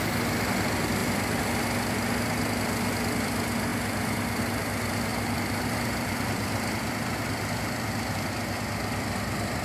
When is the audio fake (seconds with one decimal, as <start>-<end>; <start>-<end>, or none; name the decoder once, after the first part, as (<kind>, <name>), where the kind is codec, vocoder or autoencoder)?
5.1-8.3 (vocoder, BigVGAN v2)